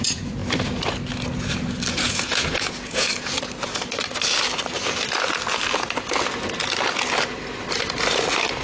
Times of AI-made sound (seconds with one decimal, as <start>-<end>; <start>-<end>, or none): 0.0-0.4; 1.9-3.1